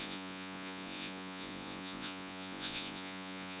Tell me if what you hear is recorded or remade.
remade